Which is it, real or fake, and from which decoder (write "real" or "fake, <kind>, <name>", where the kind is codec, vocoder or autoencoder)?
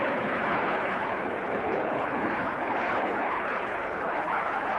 fake, codec, HILCodec